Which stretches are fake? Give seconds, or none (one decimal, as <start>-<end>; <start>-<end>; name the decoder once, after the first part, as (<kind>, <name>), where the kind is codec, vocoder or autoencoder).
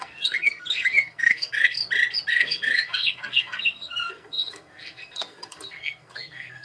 0.0-1.8 (codec, SNAC); 2.3-6.6